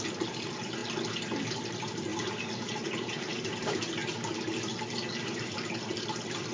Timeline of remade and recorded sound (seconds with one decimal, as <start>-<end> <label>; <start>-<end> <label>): 0.0-0.8 remade; 0.8-1.5 recorded; 1.5-4.0 remade; 4.0-5.2 recorded; 5.2-6.5 remade

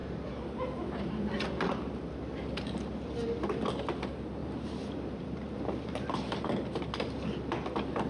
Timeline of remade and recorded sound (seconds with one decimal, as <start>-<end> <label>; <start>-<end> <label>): 0.0-1.1 remade; 1.1-4.4 recorded; 4.4-6.7 remade; 6.7-8.1 recorded

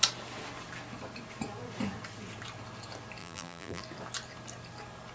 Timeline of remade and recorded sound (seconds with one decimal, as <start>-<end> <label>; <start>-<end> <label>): 0.0-3.2 recorded; 3.2-3.8 remade; 3.8-5.1 recorded

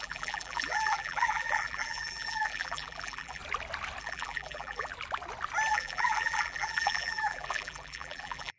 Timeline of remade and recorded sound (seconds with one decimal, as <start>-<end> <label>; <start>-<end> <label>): 0.0-3.4 remade; 3.4-4.0 recorded; 4.0-4.9 remade; 4.9-5.7 recorded; 5.7-8.6 remade

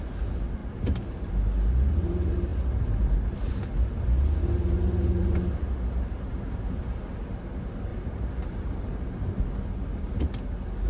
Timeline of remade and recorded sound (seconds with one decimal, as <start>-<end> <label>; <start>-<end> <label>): 0.0-7.9 recorded; 7.9-9.4 remade; 9.4-10.9 recorded

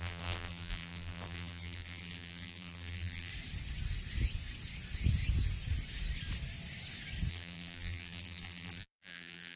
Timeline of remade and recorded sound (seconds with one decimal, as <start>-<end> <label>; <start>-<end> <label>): 0.0-3.3 remade; 3.3-7.3 recorded; 7.3-9.6 remade

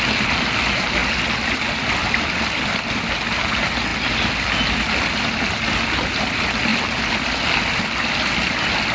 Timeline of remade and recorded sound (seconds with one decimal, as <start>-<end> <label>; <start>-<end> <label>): 0.0-8.9 recorded

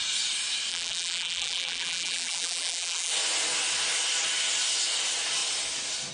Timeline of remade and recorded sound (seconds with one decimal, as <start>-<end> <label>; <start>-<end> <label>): 0.0-0.7 recorded; 0.7-3.1 remade; 3.1-6.1 recorded